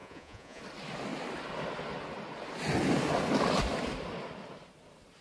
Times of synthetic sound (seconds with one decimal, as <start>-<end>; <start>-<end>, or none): 0.0-0.6